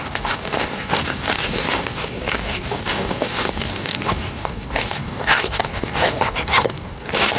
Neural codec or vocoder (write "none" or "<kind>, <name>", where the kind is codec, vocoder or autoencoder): codec, DAC